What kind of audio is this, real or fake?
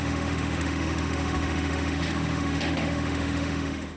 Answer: fake